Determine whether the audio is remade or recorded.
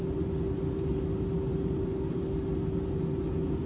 recorded